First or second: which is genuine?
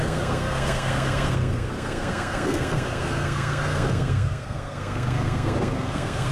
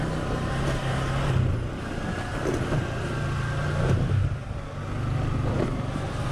second